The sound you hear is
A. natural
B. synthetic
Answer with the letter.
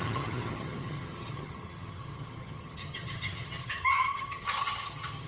B